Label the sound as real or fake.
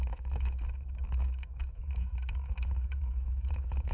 fake